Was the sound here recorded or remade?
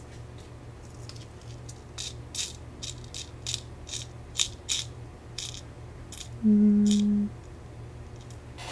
recorded